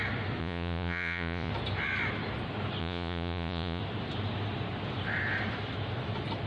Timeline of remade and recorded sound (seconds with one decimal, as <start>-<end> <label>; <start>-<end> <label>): 0.0-0.4 recorded; 0.4-1.5 remade; 1.5-2.8 recorded; 2.8-3.8 remade; 3.8-6.5 recorded